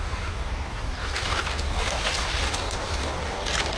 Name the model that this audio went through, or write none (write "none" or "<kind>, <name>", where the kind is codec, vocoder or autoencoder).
codec, DAC